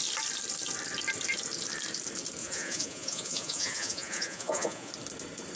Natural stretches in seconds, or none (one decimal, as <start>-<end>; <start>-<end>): 0.0-2.4; 4.9-5.6